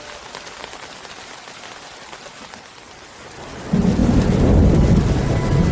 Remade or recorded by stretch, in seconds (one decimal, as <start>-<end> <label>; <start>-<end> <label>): 0.0-4.0 recorded; 4.0-5.3 remade; 5.3-5.7 recorded